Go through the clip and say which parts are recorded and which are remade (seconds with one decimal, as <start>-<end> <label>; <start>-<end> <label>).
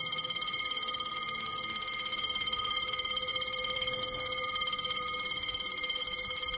0.0-2.1 recorded; 2.1-2.9 remade; 2.9-3.3 recorded; 3.3-4.0 remade; 4.0-6.6 recorded